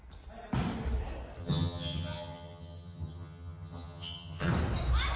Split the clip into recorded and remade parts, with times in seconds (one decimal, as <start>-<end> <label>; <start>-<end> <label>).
0.0-1.4 recorded; 1.4-4.5 remade; 4.5-5.2 recorded